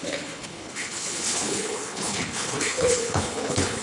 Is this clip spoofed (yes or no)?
yes